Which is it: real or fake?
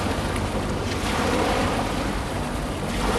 real